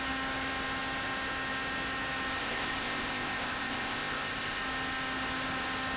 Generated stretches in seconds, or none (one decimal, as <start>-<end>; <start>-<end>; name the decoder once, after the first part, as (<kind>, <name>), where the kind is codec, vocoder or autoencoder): 2.4-4.6 (codec, ZipCodec)